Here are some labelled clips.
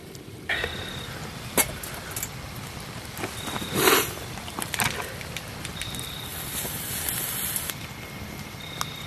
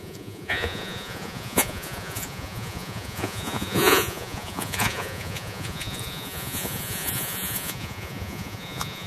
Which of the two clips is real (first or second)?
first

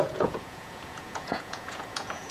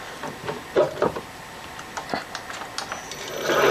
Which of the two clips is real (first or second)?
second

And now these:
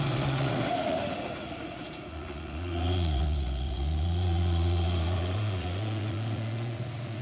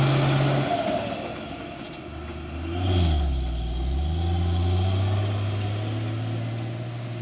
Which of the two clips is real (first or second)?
second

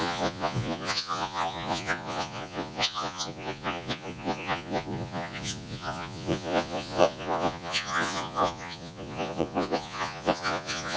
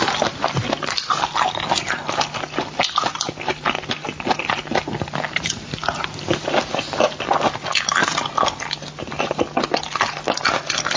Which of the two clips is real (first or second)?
second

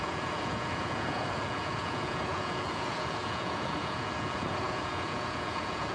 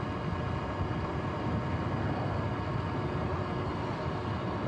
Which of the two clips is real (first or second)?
second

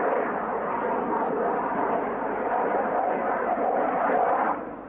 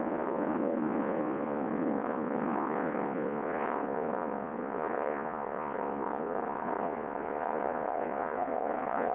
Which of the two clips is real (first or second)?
first